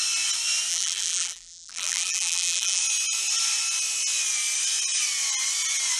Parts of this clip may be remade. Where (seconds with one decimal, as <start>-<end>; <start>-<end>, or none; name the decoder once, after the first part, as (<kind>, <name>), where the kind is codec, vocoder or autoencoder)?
0.7-2.8 (vocoder, BigVGAN v2)